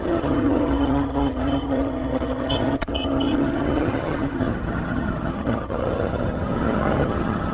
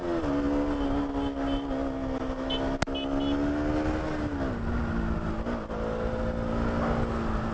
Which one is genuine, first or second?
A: second